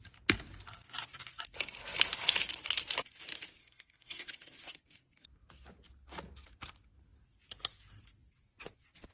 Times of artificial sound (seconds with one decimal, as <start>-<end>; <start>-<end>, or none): 3.6-4.3